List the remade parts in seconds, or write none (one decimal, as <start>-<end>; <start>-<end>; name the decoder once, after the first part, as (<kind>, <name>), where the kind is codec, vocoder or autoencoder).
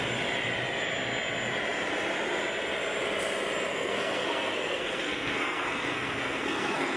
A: 3.7-7.0 (codec, SNAC)